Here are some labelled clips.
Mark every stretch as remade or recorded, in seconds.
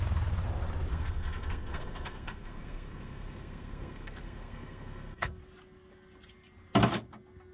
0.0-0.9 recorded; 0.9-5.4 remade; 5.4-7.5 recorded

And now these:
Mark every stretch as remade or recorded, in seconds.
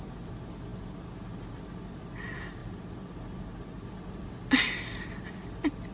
0.0-5.9 recorded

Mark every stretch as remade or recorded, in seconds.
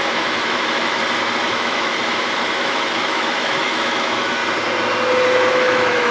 0.0-1.0 remade; 1.0-1.5 recorded; 1.5-1.9 remade; 1.9-2.6 recorded; 2.6-4.4 remade; 4.4-5.5 recorded; 5.5-6.1 remade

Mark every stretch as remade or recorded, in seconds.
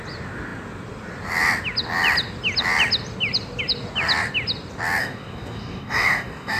0.0-5.0 recorded; 5.0-6.6 remade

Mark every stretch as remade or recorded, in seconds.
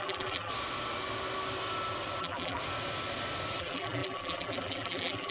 0.0-0.5 remade; 0.5-2.2 recorded; 2.2-2.6 remade; 2.6-3.6 recorded; 3.6-5.3 remade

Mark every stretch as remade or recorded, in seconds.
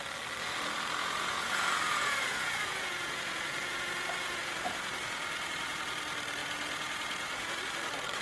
0.0-1.0 recorded; 1.0-5.8 remade; 5.8-6.4 recorded; 6.4-7.6 remade; 7.6-8.2 recorded